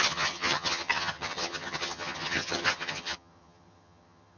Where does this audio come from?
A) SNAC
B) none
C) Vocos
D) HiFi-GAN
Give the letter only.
D